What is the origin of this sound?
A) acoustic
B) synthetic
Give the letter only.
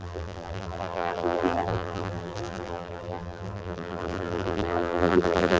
B